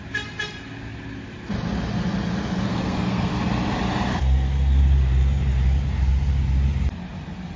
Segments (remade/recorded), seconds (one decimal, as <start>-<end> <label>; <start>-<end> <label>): 0.0-2.7 recorded; 2.7-3.3 remade; 3.3-4.1 recorded; 4.1-4.8 remade; 4.8-7.6 recorded